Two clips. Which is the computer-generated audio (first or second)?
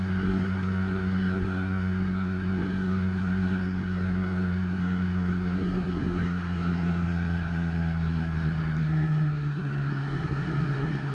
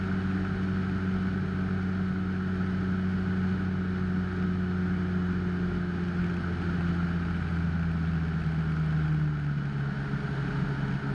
first